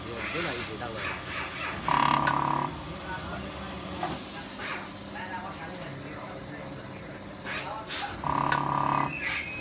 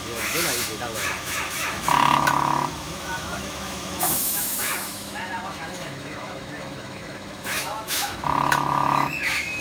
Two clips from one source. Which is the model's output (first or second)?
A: second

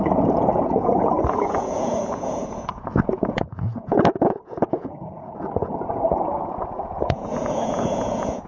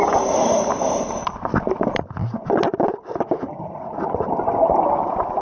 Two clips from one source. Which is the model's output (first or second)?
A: first